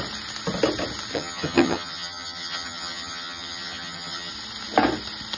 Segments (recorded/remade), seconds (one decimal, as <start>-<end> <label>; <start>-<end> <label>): 0.0-1.1 recorded; 1.1-4.3 remade; 4.3-5.4 recorded